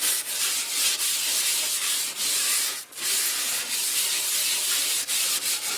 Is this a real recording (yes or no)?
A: yes